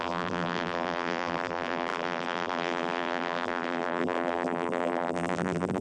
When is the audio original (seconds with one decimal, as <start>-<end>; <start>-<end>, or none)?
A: none